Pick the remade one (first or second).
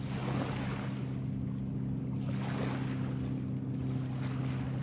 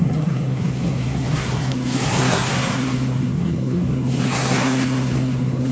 second